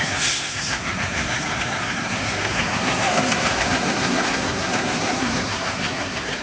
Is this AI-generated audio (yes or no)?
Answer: yes